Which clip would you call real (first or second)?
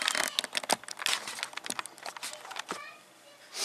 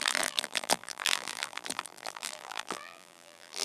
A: first